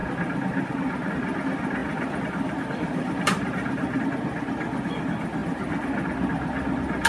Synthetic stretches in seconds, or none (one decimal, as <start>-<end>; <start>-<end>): 1.8-4.0